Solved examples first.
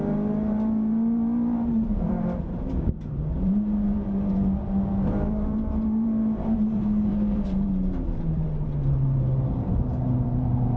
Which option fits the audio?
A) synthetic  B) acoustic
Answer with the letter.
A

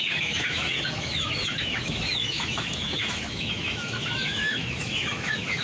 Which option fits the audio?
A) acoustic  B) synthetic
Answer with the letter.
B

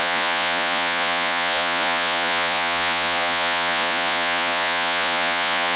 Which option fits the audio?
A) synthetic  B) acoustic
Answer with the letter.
A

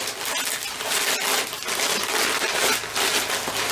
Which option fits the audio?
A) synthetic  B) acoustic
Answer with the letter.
B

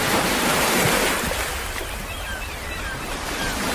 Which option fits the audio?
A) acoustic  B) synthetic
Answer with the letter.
A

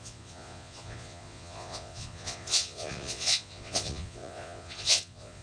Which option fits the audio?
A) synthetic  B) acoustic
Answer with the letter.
A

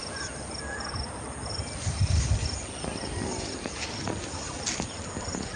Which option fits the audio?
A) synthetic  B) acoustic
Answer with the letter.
B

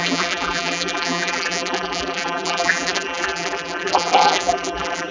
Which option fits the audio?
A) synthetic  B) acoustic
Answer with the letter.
A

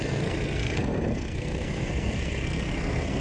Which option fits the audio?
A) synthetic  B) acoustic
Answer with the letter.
A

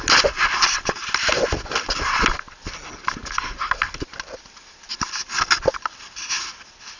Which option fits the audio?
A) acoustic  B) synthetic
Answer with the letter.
A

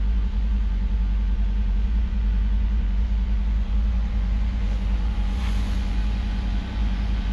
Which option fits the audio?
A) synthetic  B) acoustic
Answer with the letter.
A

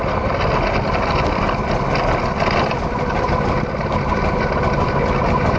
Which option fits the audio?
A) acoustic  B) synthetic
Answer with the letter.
A